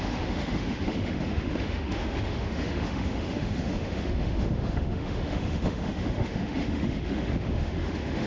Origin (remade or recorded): remade